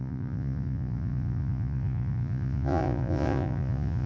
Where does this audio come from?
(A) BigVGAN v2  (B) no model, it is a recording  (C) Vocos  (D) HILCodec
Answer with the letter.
C